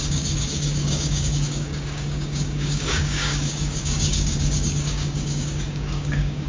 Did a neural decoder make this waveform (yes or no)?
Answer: yes